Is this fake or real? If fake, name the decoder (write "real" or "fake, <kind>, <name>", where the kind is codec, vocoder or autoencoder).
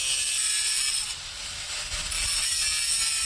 real